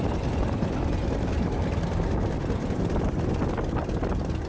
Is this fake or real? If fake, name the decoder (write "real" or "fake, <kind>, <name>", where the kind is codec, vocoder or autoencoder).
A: real